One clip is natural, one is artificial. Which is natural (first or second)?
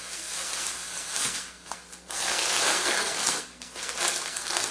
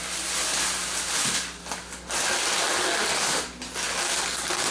second